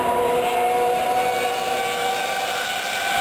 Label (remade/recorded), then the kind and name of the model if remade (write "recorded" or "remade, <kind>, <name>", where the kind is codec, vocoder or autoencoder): remade, vocoder, BigVGAN v2